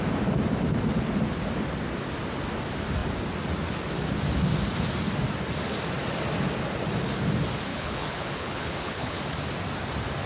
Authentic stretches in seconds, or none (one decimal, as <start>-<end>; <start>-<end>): 0.0-7.7; 9.2-10.3

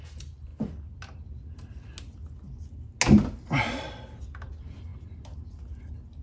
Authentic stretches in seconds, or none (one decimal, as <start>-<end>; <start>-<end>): 0.0-6.2

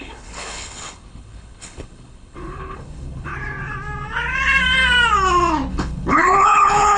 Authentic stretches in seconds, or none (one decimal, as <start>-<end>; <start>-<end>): 3.3-5.7

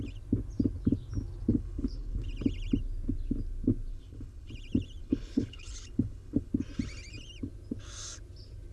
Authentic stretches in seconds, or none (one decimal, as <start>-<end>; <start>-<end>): 0.0-1.5; 2.2-3.9; 4.5-5.0; 6.5-8.7

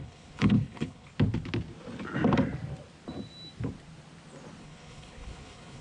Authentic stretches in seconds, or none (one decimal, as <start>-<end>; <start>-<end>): 1.1-4.6

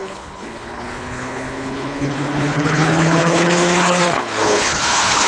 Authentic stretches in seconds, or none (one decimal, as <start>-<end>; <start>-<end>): none